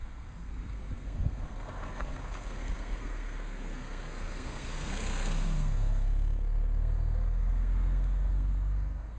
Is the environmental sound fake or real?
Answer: fake